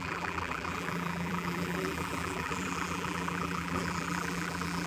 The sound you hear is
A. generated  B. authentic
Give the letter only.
A